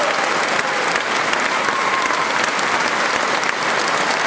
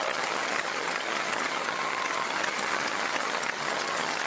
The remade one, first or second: second